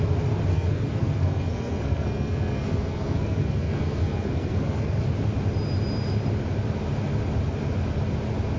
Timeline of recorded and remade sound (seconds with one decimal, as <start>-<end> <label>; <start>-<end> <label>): 0.0-0.5 recorded; 0.5-5.0 remade; 5.0-8.6 recorded